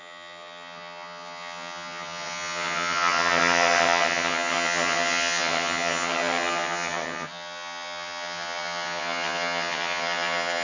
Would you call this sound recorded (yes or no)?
no